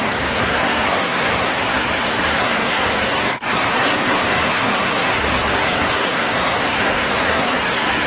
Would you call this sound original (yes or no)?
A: no